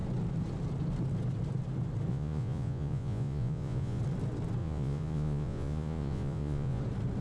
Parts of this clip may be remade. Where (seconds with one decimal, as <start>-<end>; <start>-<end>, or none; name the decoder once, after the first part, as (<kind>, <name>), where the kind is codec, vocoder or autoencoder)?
2.1-4.0 (vocoder, Vocos); 4.6-6.8